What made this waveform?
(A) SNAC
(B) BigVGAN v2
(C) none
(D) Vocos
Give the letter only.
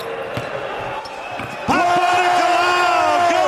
C